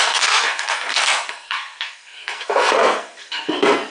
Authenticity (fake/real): fake